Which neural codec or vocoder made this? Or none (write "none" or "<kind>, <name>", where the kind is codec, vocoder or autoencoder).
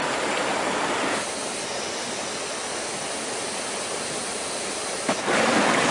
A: none